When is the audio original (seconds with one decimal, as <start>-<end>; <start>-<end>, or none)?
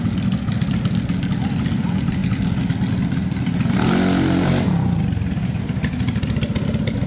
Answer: 0.0-7.1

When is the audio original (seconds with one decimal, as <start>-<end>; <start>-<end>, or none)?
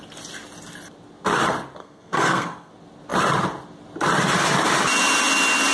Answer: 0.0-1.8; 2.7-5.7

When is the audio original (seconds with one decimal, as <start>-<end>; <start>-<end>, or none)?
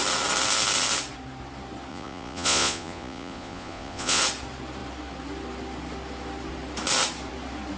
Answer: 0.0-1.9; 4.2-7.8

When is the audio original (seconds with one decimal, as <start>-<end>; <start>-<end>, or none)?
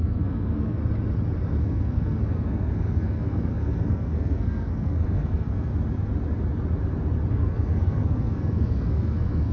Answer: 0.8-1.6; 5.7-7.3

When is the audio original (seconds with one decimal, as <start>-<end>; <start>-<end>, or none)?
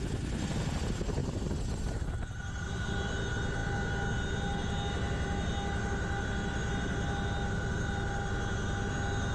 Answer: 0.0-1.2; 2.9-9.3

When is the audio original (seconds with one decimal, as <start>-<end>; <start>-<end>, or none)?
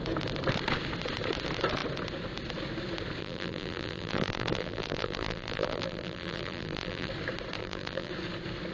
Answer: 0.0-3.2; 7.1-7.6; 8.1-8.7